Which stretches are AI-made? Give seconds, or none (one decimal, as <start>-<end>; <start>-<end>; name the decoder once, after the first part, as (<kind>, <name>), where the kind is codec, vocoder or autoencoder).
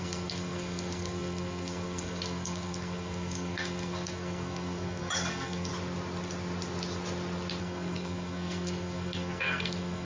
0.0-5.7 (codec, SNAC); 7.6-10.1